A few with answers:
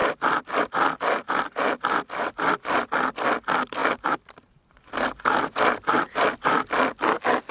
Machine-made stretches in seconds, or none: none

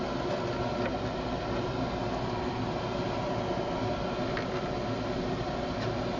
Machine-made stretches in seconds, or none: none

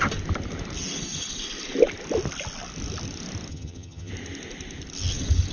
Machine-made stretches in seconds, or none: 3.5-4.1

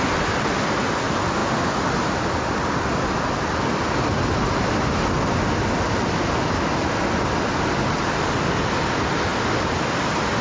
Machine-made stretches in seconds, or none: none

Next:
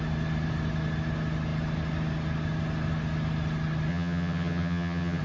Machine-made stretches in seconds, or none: 3.9-5.2

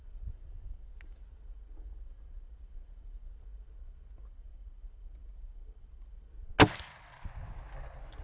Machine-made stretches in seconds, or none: none

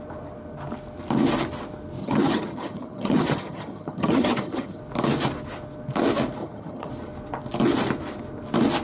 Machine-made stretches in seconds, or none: 2.0-4.8; 6.4-6.9